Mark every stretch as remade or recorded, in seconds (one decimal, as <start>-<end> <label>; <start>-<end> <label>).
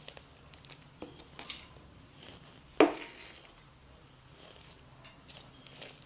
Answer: 0.0-6.1 recorded